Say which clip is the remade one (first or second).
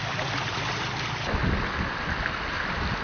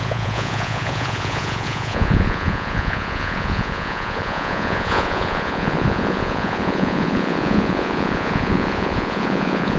second